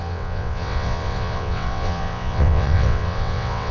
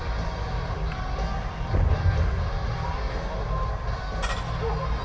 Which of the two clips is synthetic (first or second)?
first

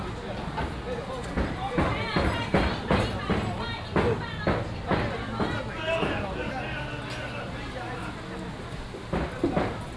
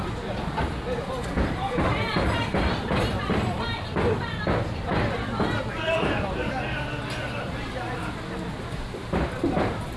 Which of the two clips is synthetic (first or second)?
second